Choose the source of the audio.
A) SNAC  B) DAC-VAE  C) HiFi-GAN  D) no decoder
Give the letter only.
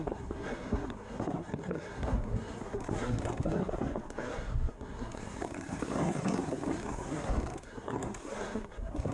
A